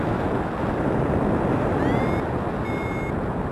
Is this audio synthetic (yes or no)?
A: no